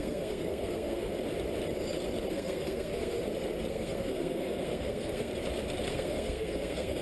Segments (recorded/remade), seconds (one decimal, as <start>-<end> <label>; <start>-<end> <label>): 0.0-1.1 remade; 1.1-2.3 recorded; 2.3-3.2 remade; 3.2-3.7 recorded; 3.7-5.3 remade; 5.3-5.9 recorded; 5.9-7.0 remade